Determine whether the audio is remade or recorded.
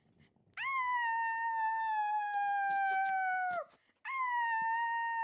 recorded